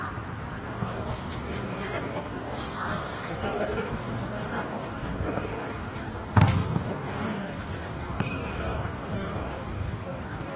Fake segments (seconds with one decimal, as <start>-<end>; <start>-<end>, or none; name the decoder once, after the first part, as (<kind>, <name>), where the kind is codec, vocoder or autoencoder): 0.6-10.6 (codec, DAC)